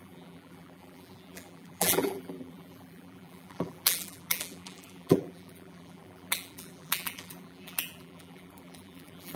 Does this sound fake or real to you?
fake